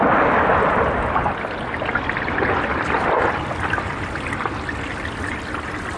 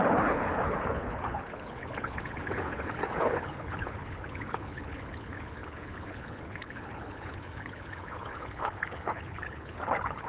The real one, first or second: first